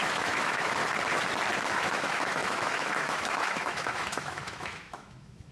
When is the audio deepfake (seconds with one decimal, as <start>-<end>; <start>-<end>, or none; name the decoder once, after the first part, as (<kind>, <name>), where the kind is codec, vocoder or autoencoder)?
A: 0.0-0.8 (autoencoder, DAC-VAE); 1.7-5.5